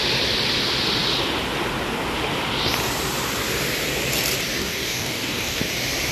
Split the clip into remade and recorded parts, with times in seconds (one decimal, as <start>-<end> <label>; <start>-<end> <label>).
0.0-4.6 recorded; 4.6-5.6 remade; 5.6-6.1 recorded